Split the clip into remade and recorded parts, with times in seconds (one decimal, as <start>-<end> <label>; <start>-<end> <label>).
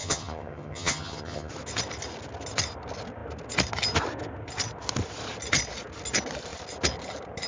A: 0.0-1.5 remade; 1.5-7.5 recorded